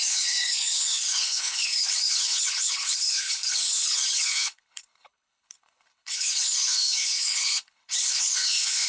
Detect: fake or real fake